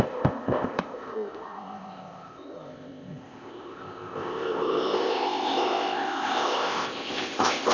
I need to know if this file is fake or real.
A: fake